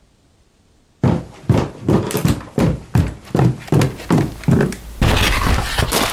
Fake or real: real